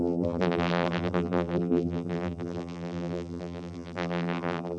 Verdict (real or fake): fake